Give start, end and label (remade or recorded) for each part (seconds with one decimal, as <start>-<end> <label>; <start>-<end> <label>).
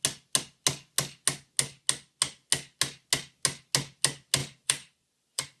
0.0-4.4 recorded; 4.4-5.6 remade